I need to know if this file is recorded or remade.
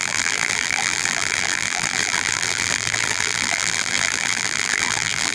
remade